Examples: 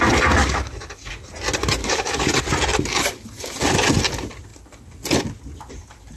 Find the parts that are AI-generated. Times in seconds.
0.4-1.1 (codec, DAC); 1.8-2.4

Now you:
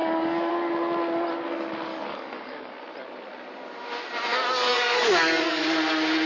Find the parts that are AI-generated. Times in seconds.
0.0-0.5 (codec, DAC); 1.9-2.7; 4.3-5.6

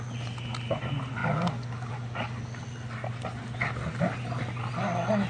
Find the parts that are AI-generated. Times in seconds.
none